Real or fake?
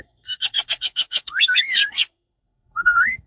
fake